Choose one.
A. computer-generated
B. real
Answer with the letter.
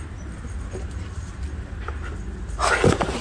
B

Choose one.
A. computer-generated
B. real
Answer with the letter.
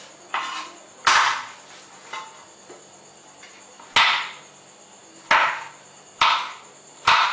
B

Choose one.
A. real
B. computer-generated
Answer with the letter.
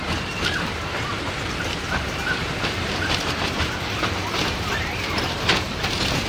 B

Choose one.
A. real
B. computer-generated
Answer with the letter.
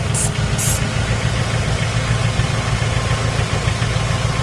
A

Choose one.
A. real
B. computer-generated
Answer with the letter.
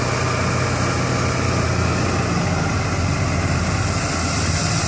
A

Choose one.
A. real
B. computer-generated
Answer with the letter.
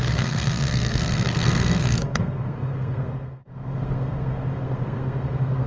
B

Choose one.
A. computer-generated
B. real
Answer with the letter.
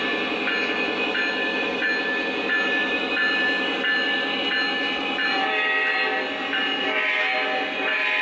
B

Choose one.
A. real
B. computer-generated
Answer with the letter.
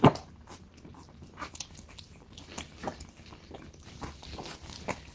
A